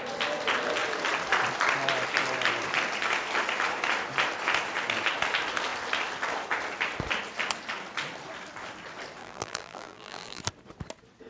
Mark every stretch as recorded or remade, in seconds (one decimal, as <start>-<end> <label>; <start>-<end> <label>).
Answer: 0.0-9.2 recorded; 9.2-10.4 remade; 10.4-11.3 recorded